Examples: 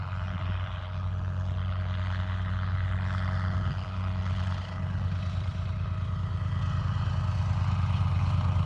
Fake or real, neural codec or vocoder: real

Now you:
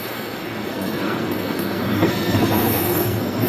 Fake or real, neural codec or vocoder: fake, codec, SNAC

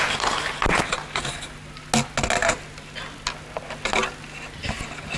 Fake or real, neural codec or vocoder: real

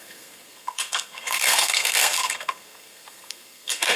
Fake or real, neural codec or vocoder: fake, codec, SNAC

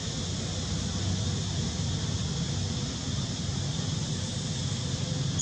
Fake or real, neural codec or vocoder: real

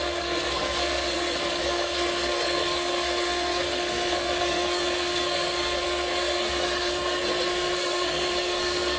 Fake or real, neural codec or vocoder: fake, codec, SNAC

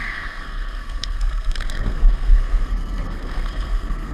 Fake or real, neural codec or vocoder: fake, codec, SNAC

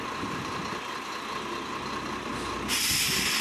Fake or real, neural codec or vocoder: real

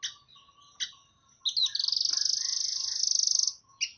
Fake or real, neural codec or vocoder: real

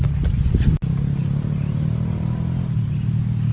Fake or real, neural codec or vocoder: real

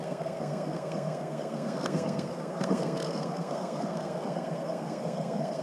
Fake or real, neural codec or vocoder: fake, codec, SNAC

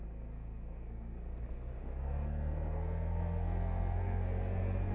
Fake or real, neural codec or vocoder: fake, codec, SNAC